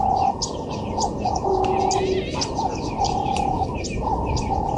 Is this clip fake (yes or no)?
no